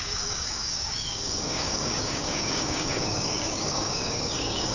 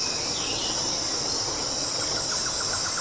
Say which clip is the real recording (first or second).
second